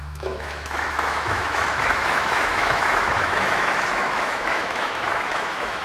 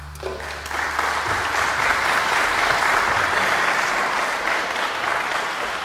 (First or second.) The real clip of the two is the second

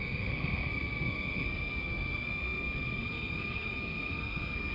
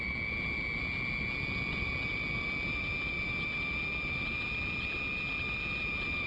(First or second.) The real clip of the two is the second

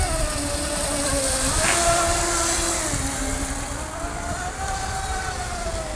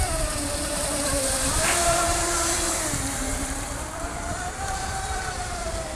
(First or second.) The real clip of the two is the first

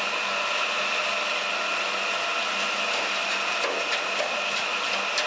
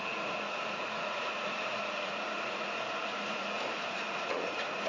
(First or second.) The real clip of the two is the first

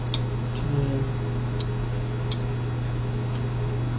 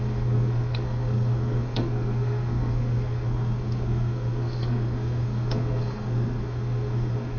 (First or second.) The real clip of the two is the first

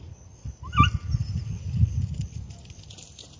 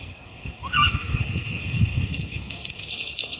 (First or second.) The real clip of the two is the first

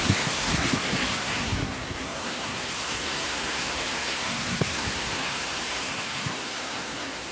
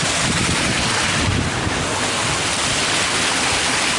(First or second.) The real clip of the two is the second